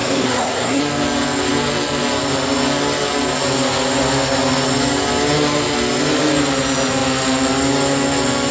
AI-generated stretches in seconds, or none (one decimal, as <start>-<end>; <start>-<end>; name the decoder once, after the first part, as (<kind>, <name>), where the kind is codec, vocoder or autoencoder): 0.0-0.8 (codec, SNAC)

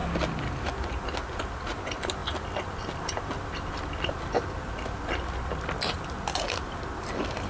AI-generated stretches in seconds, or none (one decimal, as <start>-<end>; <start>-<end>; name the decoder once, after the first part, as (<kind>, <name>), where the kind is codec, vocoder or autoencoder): none